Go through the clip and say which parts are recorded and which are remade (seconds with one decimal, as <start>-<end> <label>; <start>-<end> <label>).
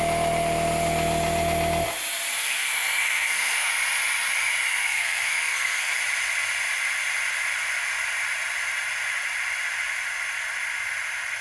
0.0-2.3 recorded; 2.3-3.7 remade; 3.7-4.7 recorded; 4.7-6.0 remade; 6.0-11.4 recorded